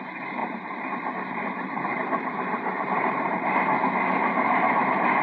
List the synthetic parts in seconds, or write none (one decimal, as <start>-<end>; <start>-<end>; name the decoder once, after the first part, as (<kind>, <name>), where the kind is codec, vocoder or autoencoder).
0.4-3.5 (vocoder, BigVGAN v2)